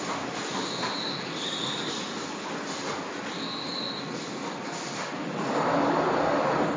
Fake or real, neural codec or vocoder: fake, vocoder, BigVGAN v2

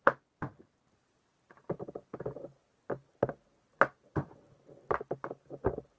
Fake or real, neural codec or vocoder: real